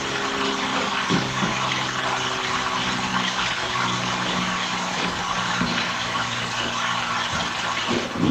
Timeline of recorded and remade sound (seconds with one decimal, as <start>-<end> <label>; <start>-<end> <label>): 0.0-0.7 recorded; 0.7-1.6 remade; 1.6-3.1 recorded; 3.1-7.0 remade; 7.0-8.3 recorded